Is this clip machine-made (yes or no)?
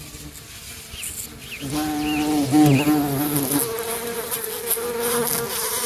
no